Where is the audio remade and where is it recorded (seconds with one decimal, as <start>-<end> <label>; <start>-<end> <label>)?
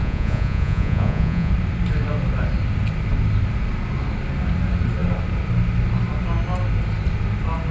0.0-1.5 remade; 1.5-7.7 recorded